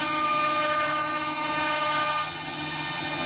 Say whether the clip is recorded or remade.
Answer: remade